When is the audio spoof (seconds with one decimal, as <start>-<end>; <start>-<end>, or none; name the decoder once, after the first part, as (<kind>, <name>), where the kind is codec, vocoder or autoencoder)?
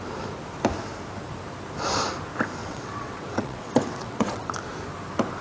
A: 2.6-4.5 (vocoder, WaveNeXt)